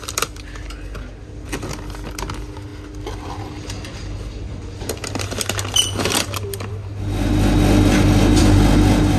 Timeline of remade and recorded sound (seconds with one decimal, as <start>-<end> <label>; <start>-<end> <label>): 0.0-9.2 recorded